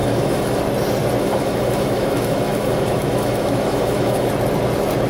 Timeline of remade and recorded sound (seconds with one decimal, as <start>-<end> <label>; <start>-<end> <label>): 0.0-0.6 remade; 0.6-1.2 recorded; 1.2-4.3 remade; 4.3-5.1 recorded